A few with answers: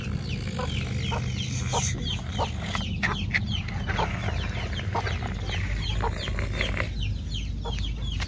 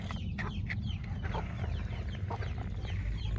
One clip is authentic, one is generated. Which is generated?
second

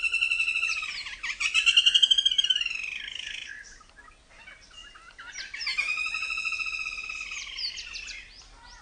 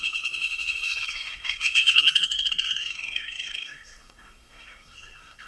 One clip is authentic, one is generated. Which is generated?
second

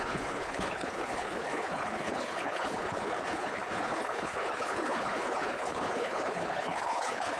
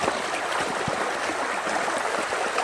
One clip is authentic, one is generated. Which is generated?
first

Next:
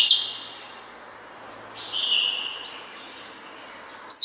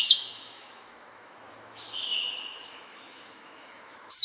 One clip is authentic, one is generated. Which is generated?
second